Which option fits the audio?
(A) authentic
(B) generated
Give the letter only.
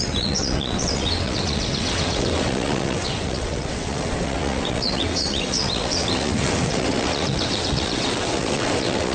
B